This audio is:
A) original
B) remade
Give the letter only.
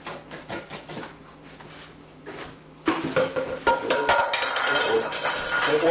A